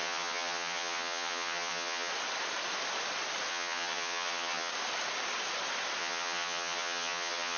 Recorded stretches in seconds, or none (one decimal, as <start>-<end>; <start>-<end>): 2.1-3.5; 4.7-6.0